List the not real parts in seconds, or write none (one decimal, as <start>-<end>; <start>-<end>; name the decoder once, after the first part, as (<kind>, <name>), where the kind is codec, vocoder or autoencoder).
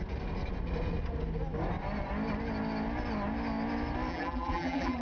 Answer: 4.1-5.0 (vocoder, BigVGAN v2)